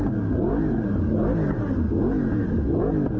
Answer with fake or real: real